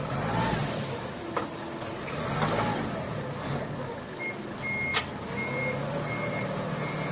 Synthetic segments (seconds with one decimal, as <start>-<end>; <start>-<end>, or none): none